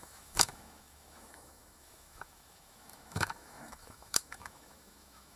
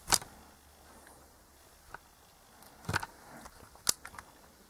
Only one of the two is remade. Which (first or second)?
first